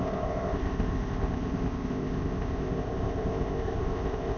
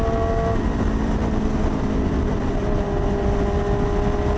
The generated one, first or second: first